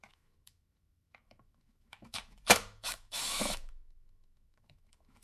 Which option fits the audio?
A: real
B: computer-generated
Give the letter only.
B